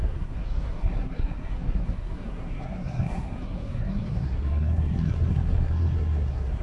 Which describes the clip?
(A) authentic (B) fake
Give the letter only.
B